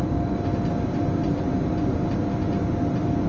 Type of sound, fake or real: real